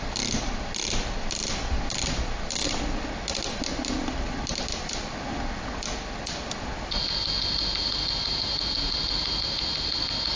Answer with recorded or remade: recorded